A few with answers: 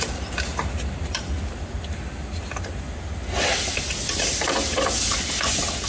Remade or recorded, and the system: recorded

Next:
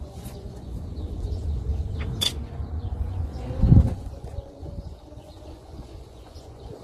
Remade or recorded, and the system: remade, vocoder, Vocos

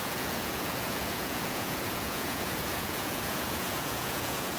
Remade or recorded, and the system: remade, vocoder, Vocos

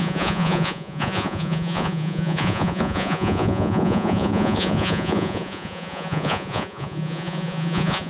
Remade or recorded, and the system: remade, vocoder, Vocos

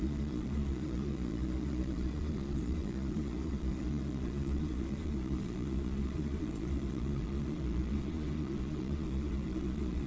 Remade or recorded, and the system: remade, vocoder, Vocos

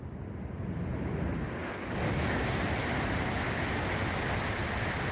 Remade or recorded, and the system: recorded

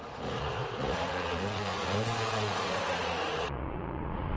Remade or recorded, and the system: remade, vocoder, Vocos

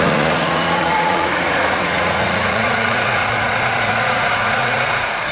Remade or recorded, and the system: remade, vocoder, Vocos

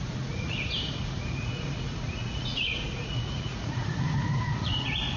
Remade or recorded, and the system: remade, vocoder, Vocos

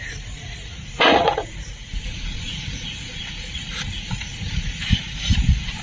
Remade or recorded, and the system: remade, vocoder, Vocos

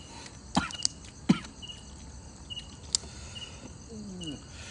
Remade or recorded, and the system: recorded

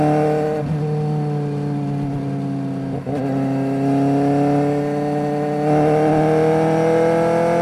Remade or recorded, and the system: recorded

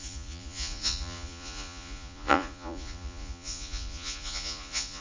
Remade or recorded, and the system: remade, vocoder, Vocos